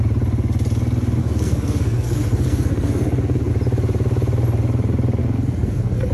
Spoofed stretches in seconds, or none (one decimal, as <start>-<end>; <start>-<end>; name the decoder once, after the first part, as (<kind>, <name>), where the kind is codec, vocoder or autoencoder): 1.2-3.5 (codec, SNAC); 5.2-6.1